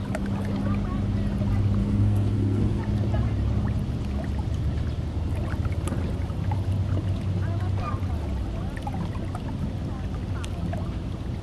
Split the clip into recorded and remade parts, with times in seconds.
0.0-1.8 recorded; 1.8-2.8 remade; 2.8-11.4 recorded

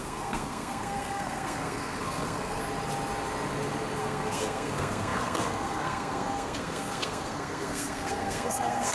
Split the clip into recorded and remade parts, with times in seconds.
0.0-2.6 remade; 2.6-4.0 recorded; 4.0-8.9 remade

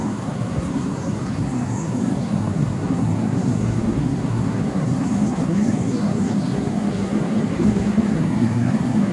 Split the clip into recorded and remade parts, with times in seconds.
0.0-9.1 remade